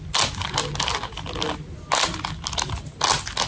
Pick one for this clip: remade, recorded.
recorded